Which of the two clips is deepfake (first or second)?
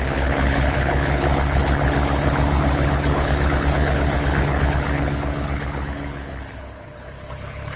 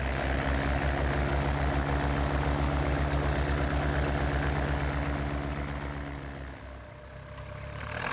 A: first